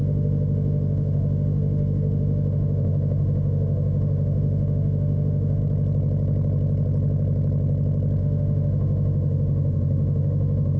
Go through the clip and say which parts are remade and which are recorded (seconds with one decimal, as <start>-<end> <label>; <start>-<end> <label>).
0.0-5.6 remade; 5.6-8.2 recorded; 8.2-10.8 remade